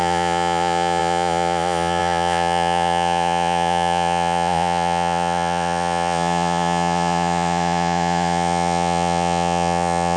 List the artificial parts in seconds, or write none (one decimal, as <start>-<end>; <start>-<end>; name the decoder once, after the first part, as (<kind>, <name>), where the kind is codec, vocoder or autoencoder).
0.0-10.2 (vocoder, Vocos)